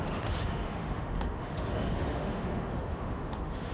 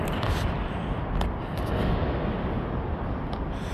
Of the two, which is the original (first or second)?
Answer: second